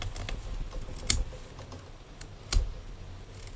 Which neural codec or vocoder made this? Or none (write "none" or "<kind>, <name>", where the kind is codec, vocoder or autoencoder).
none